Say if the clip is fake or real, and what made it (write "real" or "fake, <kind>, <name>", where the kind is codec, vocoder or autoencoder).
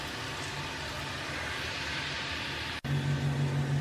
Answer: real